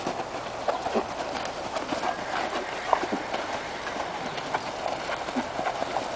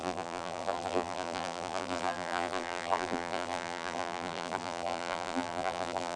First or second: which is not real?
second